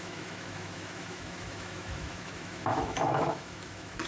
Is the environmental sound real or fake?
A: fake